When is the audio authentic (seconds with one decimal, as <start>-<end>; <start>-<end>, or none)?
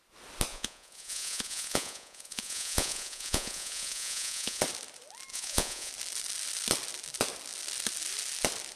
0.0-0.5; 4.6-5.3; 5.9-8.8